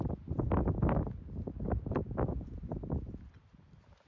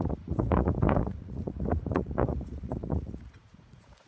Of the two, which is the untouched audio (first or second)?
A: first